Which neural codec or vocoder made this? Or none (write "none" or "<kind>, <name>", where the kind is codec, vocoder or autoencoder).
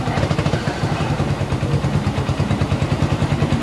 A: vocoder, BigVGAN v2